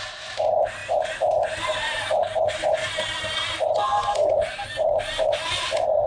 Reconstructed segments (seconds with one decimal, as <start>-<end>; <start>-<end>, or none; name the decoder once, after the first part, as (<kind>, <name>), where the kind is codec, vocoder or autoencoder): none